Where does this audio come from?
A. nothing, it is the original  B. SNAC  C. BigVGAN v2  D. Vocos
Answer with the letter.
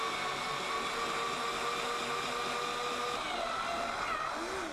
A